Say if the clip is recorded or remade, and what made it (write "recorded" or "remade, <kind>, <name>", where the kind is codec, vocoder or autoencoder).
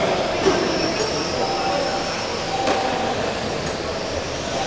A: recorded